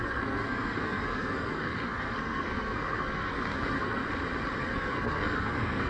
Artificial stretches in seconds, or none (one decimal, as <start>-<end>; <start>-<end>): 0.0-4.0; 4.6-5.9